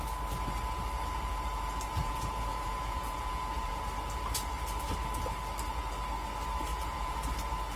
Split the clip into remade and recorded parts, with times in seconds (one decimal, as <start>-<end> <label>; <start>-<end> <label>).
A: 0.0-2.0 recorded; 2.0-3.8 remade; 3.8-6.7 recorded; 6.7-7.3 remade; 7.3-7.8 recorded

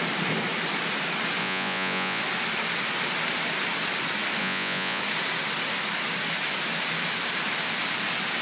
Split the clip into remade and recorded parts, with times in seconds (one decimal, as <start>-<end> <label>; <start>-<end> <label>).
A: 0.0-1.4 recorded; 1.4-2.2 remade; 2.2-4.4 recorded; 4.4-5.0 remade; 5.0-8.4 recorded

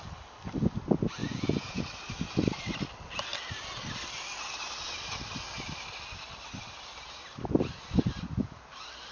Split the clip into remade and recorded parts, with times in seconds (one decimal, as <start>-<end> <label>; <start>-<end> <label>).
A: 0.0-1.2 recorded; 1.2-1.8 remade; 1.8-9.1 recorded